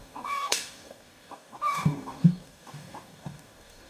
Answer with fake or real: fake